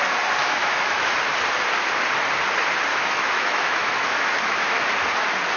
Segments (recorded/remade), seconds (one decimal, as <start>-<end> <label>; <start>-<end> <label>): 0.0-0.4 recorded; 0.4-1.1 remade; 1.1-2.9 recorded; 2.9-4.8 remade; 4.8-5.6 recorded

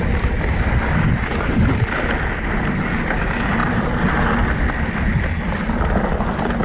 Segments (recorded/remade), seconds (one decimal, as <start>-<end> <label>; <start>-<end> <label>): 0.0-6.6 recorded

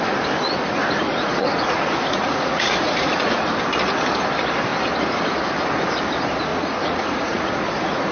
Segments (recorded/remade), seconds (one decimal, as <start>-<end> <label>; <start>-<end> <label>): 0.0-0.8 recorded; 0.8-3.6 remade; 3.6-6.5 recorded; 6.5-8.1 remade

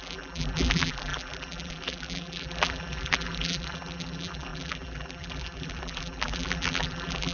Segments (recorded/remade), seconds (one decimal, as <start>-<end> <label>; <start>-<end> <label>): 0.0-7.3 remade